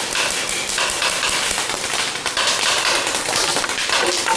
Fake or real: fake